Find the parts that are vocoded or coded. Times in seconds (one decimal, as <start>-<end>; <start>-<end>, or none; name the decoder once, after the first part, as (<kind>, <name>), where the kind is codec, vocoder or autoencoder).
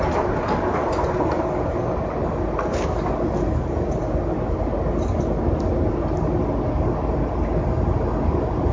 none